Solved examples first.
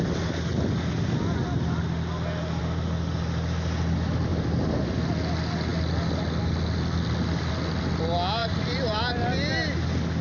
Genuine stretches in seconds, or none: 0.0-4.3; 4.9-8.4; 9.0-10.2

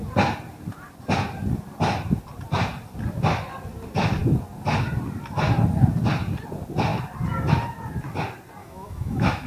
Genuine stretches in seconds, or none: 0.0-8.6

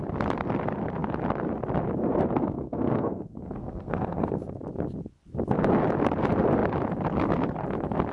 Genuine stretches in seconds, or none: 0.0-2.4; 4.6-8.1

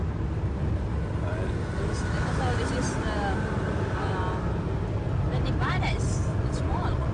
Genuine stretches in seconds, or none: 0.0-6.3

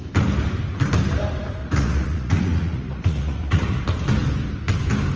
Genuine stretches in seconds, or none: 0.0-1.6; 3.8-5.2

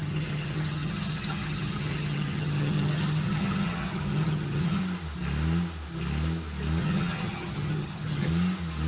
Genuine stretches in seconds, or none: 4.8-6.8; 8.3-8.9